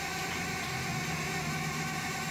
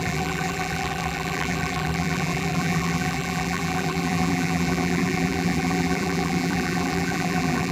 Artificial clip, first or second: second